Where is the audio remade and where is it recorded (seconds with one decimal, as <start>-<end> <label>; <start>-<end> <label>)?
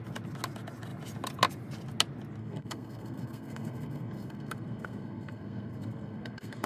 0.0-2.4 recorded; 2.4-6.7 remade